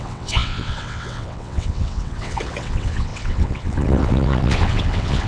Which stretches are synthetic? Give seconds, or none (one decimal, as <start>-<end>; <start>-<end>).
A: 0.0-5.3